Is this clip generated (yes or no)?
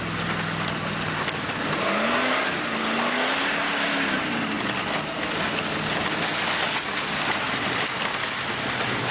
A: no